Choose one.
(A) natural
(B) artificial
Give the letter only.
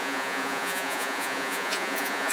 B